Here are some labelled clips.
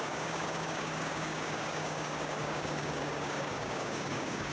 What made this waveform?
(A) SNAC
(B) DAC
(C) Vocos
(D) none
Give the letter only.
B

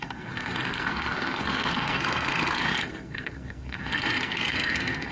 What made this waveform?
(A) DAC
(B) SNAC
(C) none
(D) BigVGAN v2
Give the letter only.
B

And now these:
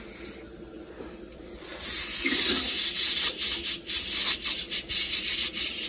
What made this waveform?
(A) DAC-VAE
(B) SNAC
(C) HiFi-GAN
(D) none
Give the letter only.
D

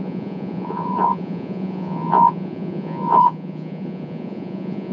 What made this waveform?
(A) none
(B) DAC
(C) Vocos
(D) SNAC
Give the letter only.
C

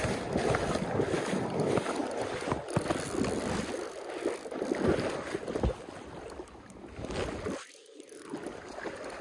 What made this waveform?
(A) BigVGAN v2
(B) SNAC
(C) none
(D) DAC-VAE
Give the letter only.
C